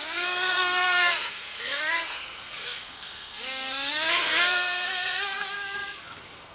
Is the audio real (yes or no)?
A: no